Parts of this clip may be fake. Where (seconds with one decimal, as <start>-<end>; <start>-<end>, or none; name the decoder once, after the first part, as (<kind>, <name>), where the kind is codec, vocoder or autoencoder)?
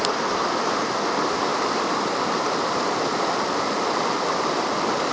none